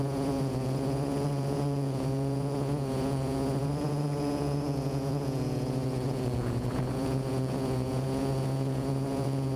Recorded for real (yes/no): no